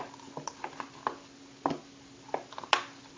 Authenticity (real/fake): real